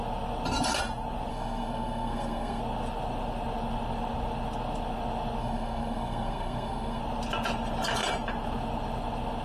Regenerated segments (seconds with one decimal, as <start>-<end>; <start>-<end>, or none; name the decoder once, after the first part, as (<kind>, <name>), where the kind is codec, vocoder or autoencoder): 1.3-2.6 (codec, SNAC); 5.4-7.0